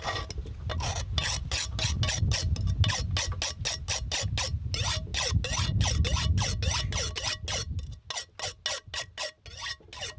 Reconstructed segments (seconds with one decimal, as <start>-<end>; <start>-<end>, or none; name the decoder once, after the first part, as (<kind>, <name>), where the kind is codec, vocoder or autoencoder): none